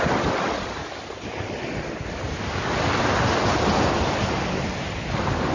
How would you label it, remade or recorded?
recorded